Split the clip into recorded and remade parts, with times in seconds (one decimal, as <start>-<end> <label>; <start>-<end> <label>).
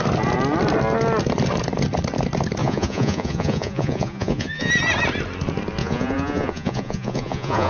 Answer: 0.0-2.6 recorded; 2.6-4.7 remade; 4.7-5.8 recorded; 5.8-7.7 remade